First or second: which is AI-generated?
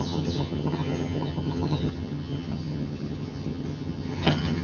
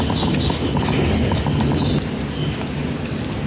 first